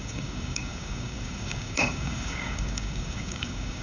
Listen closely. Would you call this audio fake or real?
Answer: fake